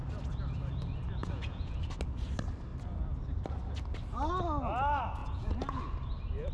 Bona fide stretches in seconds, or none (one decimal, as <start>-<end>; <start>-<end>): 0.0-1.2; 1.8-5.2; 5.8-6.5